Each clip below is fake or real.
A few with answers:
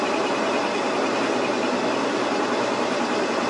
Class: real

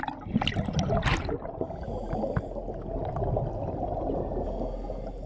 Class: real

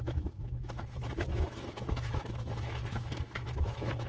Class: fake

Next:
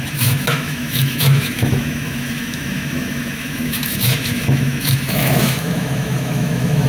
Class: fake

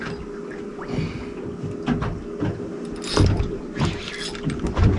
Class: real